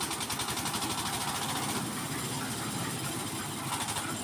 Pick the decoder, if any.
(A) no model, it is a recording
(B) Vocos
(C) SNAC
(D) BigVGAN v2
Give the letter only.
A